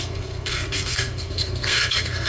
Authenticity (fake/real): fake